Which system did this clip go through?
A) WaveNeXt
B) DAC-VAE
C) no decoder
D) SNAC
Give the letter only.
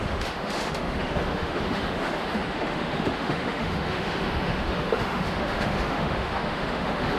B